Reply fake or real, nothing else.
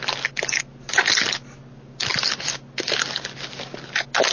real